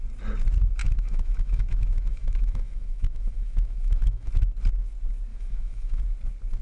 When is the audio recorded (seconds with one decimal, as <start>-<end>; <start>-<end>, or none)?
0.0-0.8; 4.3-5.3; 6.0-6.6